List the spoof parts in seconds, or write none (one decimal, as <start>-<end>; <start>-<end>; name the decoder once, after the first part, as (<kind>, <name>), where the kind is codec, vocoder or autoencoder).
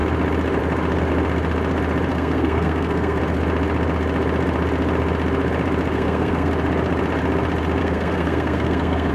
2.1-3.2 (codec, SNAC); 5.9-6.5; 7.8-9.1